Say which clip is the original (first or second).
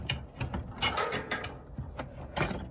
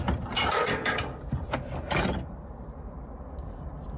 first